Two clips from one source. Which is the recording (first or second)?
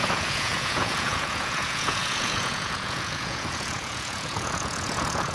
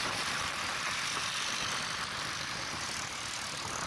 second